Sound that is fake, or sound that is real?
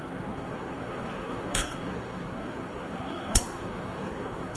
fake